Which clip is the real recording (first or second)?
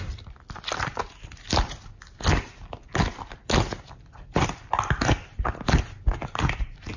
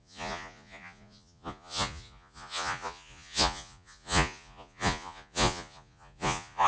first